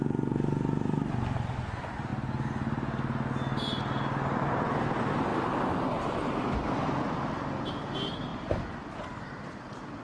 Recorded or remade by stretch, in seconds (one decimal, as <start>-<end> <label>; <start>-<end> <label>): 0.0-10.0 recorded